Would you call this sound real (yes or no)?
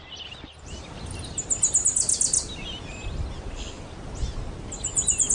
yes